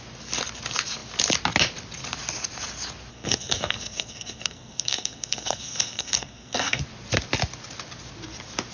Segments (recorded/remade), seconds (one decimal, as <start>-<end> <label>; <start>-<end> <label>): 0.0-3.1 recorded; 3.1-6.8 remade; 6.8-8.7 recorded